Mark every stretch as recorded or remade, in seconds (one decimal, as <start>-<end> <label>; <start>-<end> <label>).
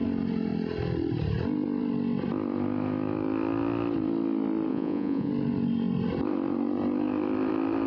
0.0-4.7 recorded; 4.7-5.3 remade; 5.3-7.9 recorded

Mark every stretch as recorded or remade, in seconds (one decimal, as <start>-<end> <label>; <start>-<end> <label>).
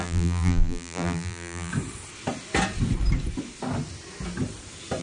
0.0-1.7 remade; 1.7-5.0 recorded